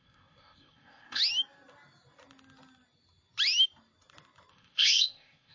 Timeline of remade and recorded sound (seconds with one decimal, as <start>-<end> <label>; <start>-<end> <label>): 0.0-1.2 remade; 1.2-4.5 recorded; 4.5-5.5 remade